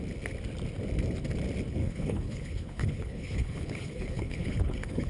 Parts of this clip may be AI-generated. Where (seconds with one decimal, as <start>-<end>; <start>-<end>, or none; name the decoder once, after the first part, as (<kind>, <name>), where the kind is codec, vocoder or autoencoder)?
1.8-5.1 (codec, HILCodec)